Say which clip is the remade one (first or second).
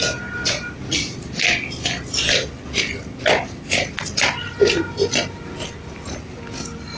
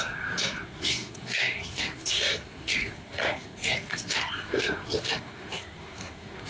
second